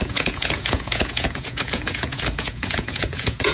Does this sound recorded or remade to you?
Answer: remade